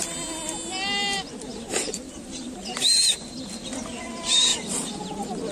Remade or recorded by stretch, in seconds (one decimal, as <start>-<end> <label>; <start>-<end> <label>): 0.0-1.5 recorded; 1.5-3.4 remade; 3.4-5.5 recorded